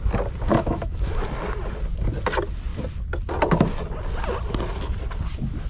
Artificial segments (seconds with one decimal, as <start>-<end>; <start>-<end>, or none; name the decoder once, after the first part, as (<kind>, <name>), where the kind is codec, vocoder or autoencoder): 0.5-1.2 (autoencoder, DAC-VAE)